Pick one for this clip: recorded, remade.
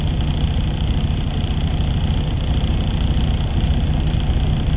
recorded